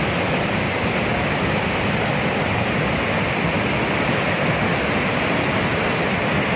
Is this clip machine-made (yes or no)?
no